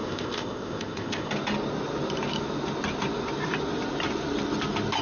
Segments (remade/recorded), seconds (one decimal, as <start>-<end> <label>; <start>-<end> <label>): 0.0-1.3 remade; 1.3-5.0 recorded

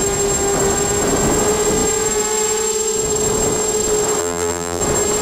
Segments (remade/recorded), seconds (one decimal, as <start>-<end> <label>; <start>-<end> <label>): 0.0-4.2 recorded; 4.2-4.8 remade; 4.8-5.2 recorded

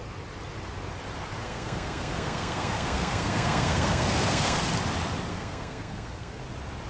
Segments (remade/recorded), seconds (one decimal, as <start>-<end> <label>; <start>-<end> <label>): 0.0-1.4 recorded; 1.4-4.6 remade; 4.6-5.3 recorded; 5.3-6.4 remade; 6.4-6.9 recorded

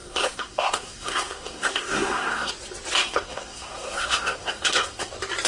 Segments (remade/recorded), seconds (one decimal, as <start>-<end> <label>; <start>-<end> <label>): 0.0-2.5 remade; 2.5-3.0 recorded; 3.0-5.1 remade; 5.1-5.5 recorded

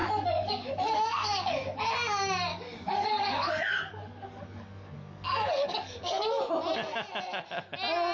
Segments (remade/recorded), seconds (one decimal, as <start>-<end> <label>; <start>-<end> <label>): 0.0-1.8 remade; 1.8-2.5 recorded; 2.5-6.4 remade; 6.4-8.1 recorded

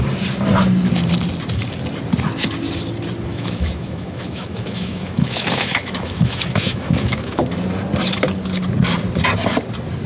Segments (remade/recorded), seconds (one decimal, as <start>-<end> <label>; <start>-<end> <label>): 0.0-3.3 recorded; 3.3-7.4 remade; 7.4-10.1 recorded

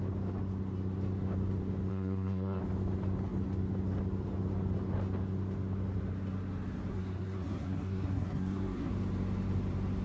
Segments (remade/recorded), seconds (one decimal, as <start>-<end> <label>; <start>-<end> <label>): 0.0-1.9 recorded; 1.9-2.6 remade; 2.6-6.9 recorded; 6.9-8.9 remade; 8.9-10.0 recorded

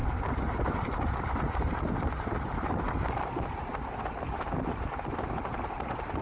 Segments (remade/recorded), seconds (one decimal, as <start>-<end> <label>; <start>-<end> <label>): 0.0-6.2 recorded